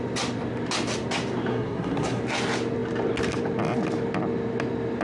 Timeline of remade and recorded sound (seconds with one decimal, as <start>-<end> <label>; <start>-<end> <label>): 0.0-1.5 recorded; 1.5-2.2 remade; 2.2-5.0 recorded